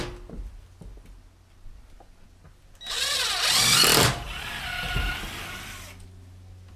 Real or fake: real